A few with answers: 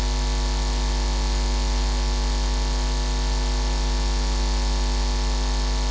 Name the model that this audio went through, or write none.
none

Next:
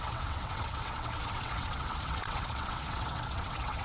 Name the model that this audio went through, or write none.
vocoder, WaveNeXt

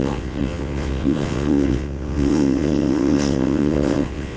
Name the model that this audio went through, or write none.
vocoder, WaveNeXt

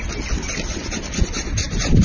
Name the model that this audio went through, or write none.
none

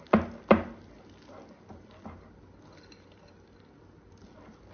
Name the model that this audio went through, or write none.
none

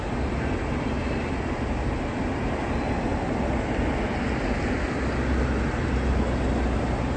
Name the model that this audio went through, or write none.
none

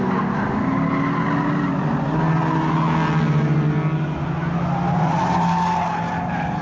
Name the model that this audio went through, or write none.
none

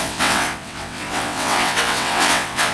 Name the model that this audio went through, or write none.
vocoder, WaveNeXt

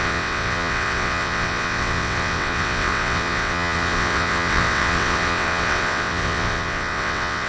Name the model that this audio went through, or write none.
vocoder, WaveNeXt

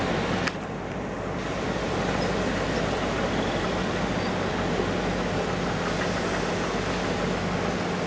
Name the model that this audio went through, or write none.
none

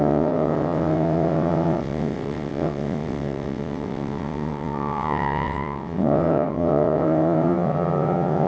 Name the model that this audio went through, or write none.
vocoder, WaveNeXt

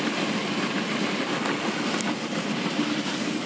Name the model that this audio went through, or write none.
none